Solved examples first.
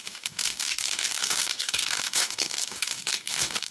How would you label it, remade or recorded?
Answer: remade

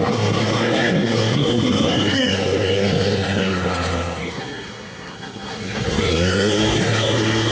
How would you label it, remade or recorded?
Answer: remade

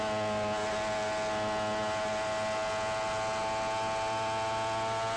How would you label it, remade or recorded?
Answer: recorded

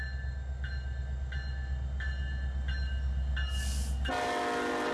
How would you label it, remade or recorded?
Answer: recorded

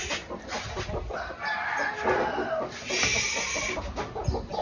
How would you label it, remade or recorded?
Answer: recorded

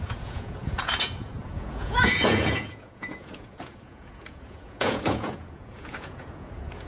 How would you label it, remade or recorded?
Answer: remade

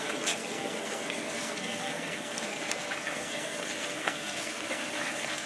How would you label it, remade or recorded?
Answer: remade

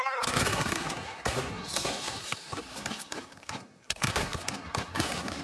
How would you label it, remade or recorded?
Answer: remade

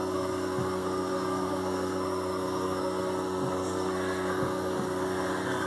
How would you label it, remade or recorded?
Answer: remade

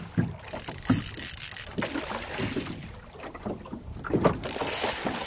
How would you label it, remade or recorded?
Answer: recorded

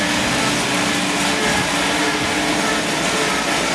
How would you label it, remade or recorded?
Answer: recorded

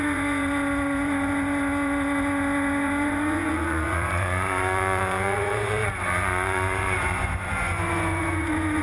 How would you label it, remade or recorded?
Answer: remade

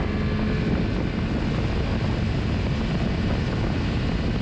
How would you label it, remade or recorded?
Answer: recorded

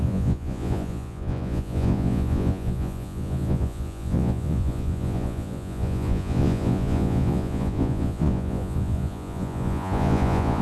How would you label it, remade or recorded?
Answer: remade